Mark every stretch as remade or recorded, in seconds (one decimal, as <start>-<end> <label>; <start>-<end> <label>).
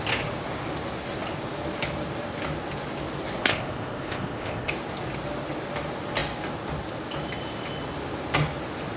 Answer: 0.0-3.4 recorded; 3.4-4.7 remade; 4.7-9.0 recorded